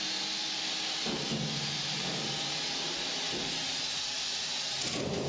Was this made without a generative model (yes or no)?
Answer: yes